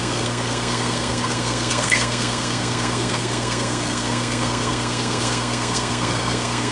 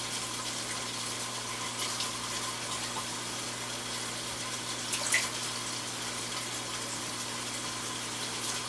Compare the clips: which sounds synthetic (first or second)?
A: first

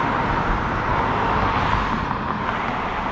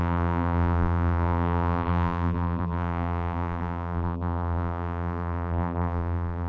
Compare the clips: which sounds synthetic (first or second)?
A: second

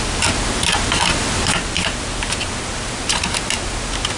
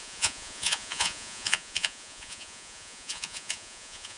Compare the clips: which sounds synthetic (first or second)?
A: second